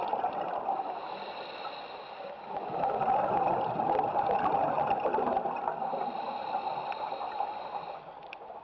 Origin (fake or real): real